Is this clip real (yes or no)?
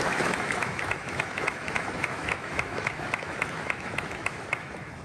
no